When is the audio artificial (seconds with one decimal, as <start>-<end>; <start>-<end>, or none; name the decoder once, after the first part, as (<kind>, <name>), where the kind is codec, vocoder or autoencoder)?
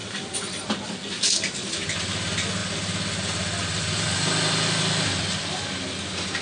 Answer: 0.0-0.9 (vocoder, BigVGAN v2)